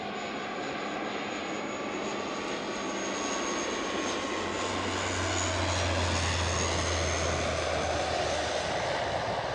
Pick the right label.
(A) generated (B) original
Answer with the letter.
B